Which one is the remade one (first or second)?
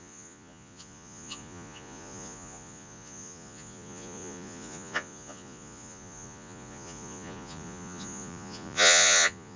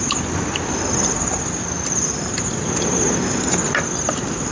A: first